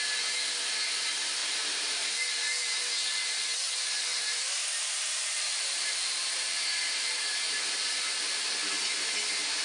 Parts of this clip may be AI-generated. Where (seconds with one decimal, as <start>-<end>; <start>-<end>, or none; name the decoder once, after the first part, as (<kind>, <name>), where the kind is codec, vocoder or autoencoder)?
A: 1.4-2.1 (vocoder, BigVGAN v2); 4.1-8.1